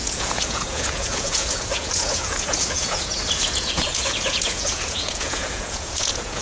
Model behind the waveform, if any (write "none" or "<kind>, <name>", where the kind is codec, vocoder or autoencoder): vocoder, Vocos